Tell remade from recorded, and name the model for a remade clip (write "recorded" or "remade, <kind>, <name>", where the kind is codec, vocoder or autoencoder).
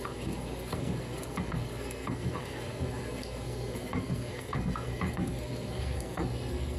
remade, codec, SNAC